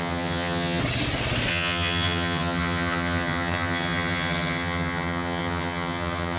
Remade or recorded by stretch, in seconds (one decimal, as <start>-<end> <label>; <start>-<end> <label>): 0.0-0.8 remade; 0.8-1.5 recorded; 1.5-6.4 remade